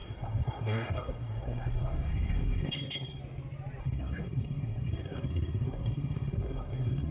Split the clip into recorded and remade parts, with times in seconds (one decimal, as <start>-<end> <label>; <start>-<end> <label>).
0.0-3.2 remade; 3.2-3.8 recorded; 3.8-7.1 remade

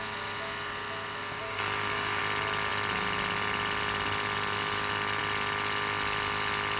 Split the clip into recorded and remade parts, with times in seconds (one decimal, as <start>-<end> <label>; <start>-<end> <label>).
0.0-1.4 recorded; 1.4-2.2 remade; 2.2-6.8 recorded

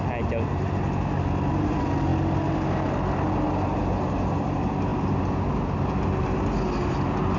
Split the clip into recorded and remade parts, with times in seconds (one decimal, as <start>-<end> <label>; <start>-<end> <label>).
0.0-7.4 recorded

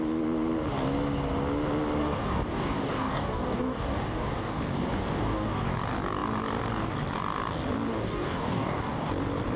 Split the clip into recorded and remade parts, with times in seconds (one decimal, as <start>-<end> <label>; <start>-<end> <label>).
0.0-2.0 recorded; 2.0-4.6 remade; 4.6-5.0 recorded; 5.0-5.7 remade; 5.7-7.9 recorded; 7.9-9.1 remade; 9.1-9.6 recorded

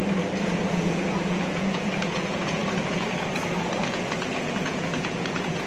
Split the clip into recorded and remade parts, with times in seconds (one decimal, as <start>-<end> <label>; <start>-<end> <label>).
0.0-0.7 recorded; 0.7-5.7 remade

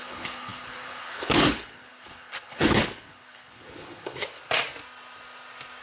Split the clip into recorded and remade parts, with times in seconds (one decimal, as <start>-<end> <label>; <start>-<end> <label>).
0.0-4.4 remade; 4.4-5.8 recorded

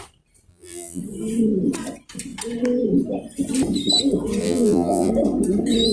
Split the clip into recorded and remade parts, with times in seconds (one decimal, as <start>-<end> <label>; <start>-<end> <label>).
0.0-0.5 recorded; 0.5-1.0 remade; 1.0-4.4 recorded; 4.4-5.1 remade; 5.1-5.9 recorded